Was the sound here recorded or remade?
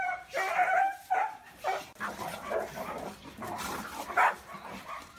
remade